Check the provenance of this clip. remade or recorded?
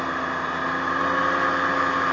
recorded